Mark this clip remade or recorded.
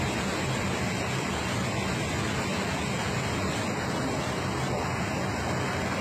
recorded